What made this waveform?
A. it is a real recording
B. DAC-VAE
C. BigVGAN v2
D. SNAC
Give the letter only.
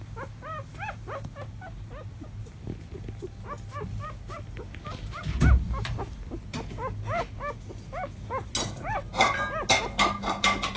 A